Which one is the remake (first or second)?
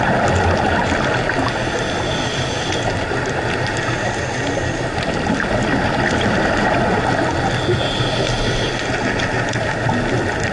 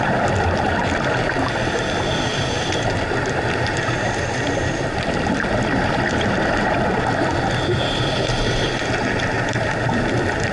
second